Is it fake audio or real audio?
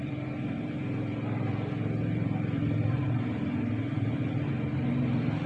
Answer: fake